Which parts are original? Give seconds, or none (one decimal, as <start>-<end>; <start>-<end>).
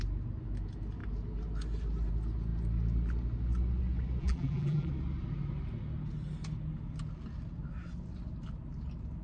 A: 0.0-4.2; 4.9-9.2